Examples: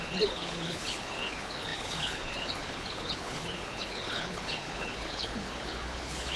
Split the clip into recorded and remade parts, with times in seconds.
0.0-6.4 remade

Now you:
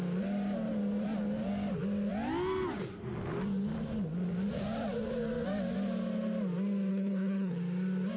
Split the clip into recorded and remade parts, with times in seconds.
0.0-6.9 recorded; 6.9-7.6 remade; 7.6-8.2 recorded

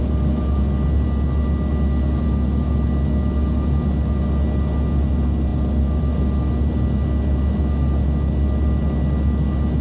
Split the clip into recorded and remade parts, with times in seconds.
0.0-9.8 recorded

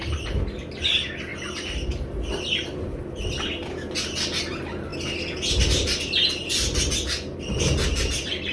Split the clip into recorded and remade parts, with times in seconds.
0.0-8.5 recorded

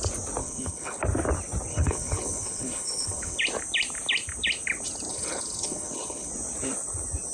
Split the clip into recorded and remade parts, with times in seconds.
0.0-0.4 recorded; 0.4-1.0 remade; 1.0-1.7 recorded; 1.7-3.4 remade; 3.4-5.1 recorded; 5.1-6.3 remade; 6.3-7.3 recorded

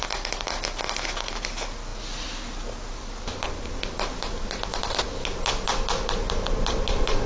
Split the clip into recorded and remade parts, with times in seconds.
0.0-7.3 recorded